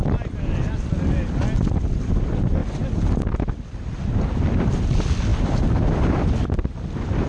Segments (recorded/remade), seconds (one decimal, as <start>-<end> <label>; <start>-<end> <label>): 0.0-7.3 recorded